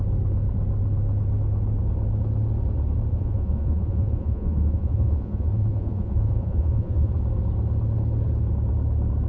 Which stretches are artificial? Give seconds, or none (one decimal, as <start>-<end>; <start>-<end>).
3.1-7.1